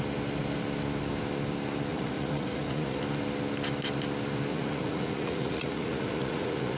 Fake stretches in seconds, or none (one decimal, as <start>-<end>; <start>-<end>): 1.9-3.0; 4.5-6.8